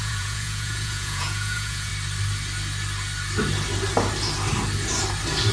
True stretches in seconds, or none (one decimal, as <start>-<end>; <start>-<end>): 1.9-5.5